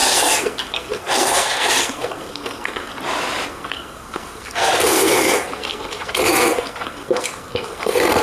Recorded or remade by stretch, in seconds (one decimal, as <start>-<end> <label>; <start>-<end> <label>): 0.0-2.9 remade; 2.9-3.5 recorded; 3.5-8.2 remade